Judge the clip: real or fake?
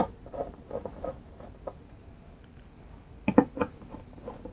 real